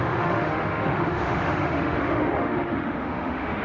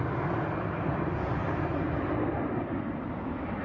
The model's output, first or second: first